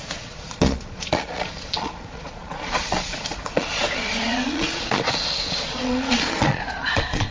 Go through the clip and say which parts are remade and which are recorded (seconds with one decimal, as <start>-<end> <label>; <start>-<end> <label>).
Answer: 0.0-7.3 remade